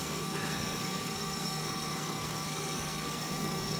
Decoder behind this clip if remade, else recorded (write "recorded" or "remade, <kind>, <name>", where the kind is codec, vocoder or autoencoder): remade, codec, SNAC